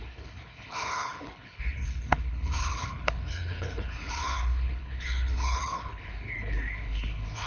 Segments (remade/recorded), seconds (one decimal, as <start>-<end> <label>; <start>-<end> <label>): 0.0-7.5 remade